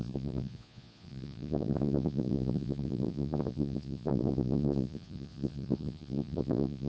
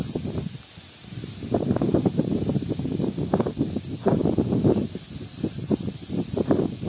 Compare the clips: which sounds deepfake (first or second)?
first